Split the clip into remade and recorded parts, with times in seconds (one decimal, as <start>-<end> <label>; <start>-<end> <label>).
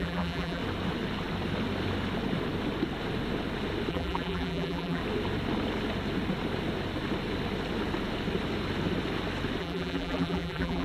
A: 0.0-0.6 remade; 0.6-3.9 recorded; 3.9-5.0 remade; 5.0-9.6 recorded; 9.6-10.8 remade